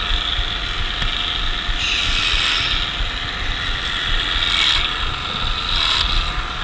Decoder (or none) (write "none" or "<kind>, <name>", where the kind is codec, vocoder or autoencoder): none